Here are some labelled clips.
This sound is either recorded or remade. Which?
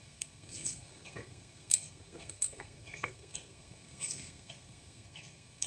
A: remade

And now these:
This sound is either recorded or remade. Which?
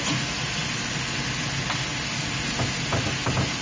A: recorded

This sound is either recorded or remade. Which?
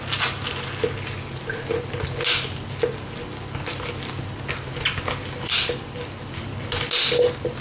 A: recorded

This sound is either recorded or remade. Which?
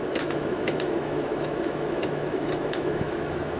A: remade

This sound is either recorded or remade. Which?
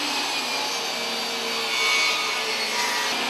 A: recorded